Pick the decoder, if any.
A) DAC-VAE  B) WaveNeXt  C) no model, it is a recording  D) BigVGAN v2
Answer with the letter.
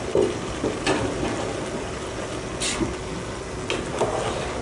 C